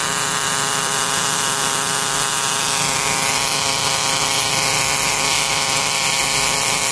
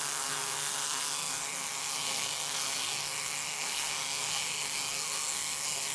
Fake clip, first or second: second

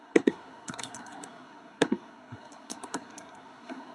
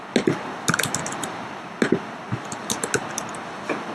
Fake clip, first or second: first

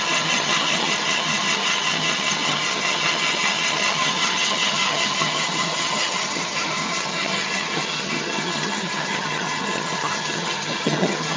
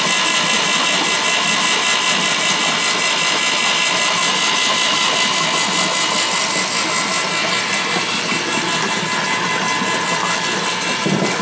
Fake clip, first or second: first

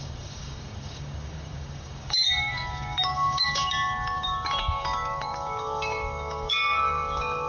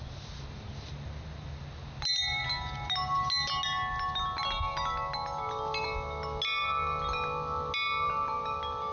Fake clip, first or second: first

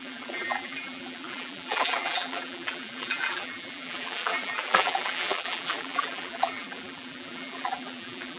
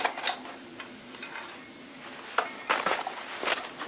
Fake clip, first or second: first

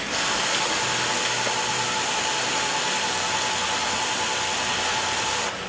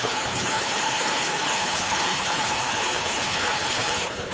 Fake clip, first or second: second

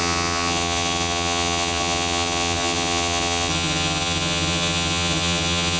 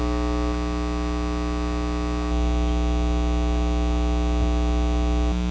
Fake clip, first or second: first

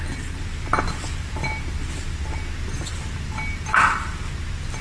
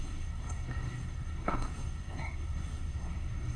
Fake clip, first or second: second